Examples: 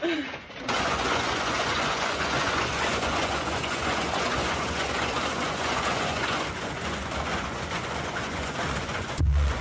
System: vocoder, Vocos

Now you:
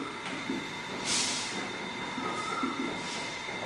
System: none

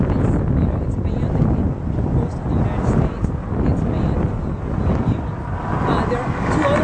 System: none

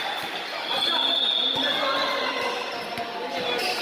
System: none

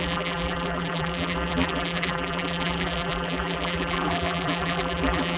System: vocoder, BigVGAN v2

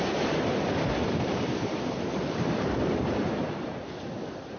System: vocoder, BigVGAN v2